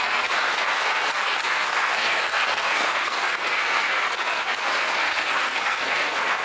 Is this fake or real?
fake